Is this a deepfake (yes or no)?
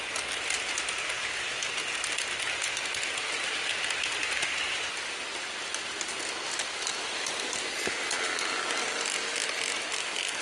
no